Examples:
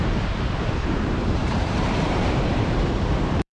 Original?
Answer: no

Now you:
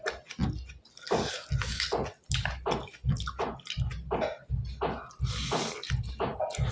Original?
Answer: yes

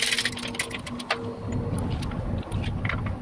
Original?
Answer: yes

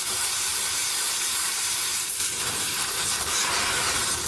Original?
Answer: no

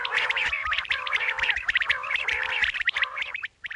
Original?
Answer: no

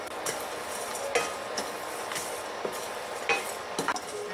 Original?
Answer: yes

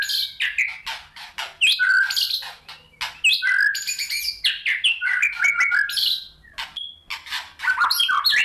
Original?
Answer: yes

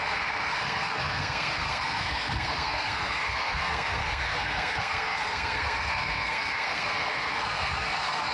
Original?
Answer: no